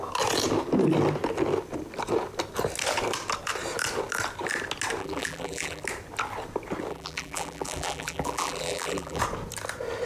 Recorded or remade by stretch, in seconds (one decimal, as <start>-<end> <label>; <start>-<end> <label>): 0.0-5.0 recorded; 5.0-5.8 remade; 5.8-6.9 recorded; 6.9-9.2 remade; 9.2-10.1 recorded